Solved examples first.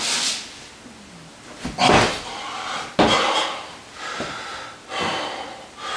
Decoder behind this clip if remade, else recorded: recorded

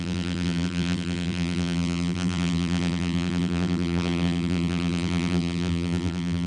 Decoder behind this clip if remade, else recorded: remade, vocoder, BigVGAN v2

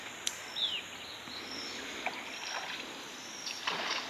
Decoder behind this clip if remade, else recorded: recorded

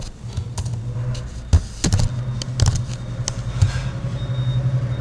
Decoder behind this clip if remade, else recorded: recorded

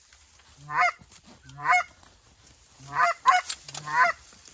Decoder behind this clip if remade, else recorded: recorded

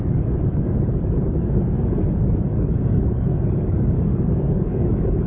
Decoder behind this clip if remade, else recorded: remade, codec, DAC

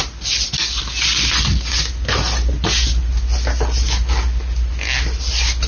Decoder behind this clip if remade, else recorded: recorded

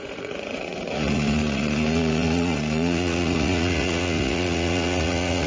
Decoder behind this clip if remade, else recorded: remade, vocoder, Vocos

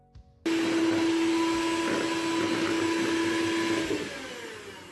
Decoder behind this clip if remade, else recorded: recorded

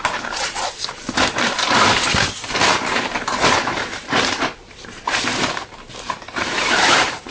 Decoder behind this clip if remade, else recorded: remade, vocoder, BigVGAN v2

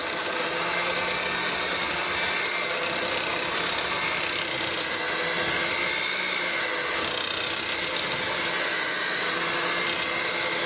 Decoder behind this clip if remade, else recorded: recorded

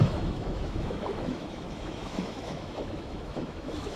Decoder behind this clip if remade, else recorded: remade, autoencoder, DAC-VAE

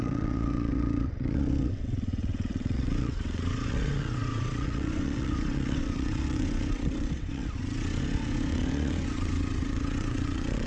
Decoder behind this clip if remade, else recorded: remade, vocoder, WaveNeXt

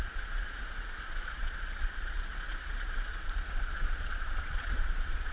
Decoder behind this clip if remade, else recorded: remade, vocoder, Vocos